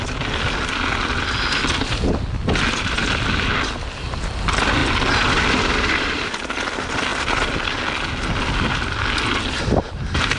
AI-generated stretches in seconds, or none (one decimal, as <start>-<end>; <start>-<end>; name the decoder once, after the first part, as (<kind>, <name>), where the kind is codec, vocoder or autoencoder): none